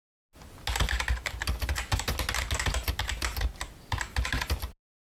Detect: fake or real real